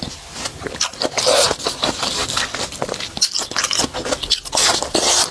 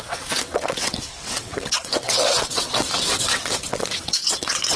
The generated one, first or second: second